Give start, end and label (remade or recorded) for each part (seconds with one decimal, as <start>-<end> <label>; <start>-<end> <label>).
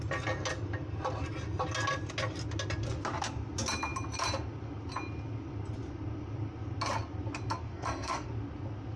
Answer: 0.0-7.7 recorded; 7.7-8.3 remade; 8.3-9.0 recorded